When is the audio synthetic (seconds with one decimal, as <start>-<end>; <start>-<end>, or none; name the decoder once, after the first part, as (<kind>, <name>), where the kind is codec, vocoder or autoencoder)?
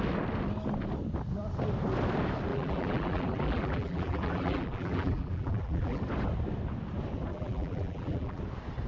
2.5-6.0 (vocoder, BigVGAN v2); 7.3-8.4